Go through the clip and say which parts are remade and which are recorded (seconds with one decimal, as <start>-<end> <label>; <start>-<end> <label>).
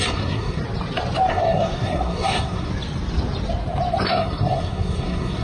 0.0-0.6 remade; 0.6-1.3 recorded; 1.3-2.7 remade; 2.7-4.1 recorded; 4.1-5.4 remade